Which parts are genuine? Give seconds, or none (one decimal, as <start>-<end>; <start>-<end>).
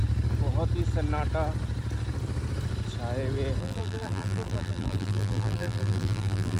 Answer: 0.0-3.6